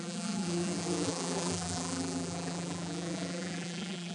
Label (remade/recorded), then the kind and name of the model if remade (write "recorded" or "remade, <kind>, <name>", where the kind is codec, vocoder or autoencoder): remade, vocoder, BigVGAN v2